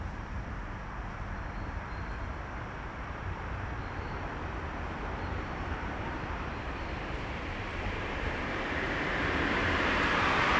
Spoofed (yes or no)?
yes